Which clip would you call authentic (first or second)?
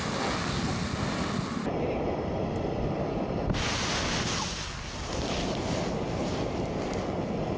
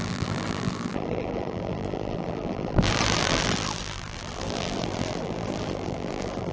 first